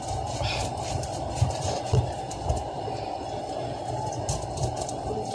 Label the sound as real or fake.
fake